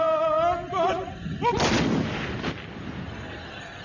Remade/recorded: recorded